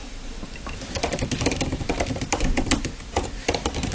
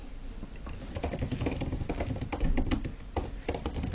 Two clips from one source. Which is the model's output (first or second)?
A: first